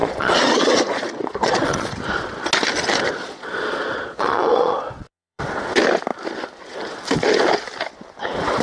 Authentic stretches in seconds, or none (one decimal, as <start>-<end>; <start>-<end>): 1.9-3.2; 5.4-8.6